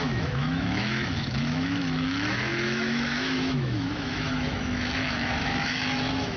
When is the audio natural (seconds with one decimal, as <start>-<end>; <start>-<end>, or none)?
none